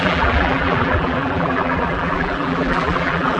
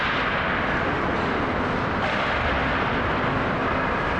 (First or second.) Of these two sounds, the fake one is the first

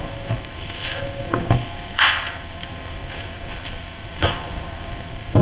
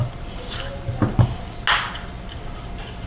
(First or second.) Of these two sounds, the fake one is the first